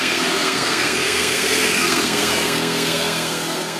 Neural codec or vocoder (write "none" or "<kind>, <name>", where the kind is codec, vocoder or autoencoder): codec, SNAC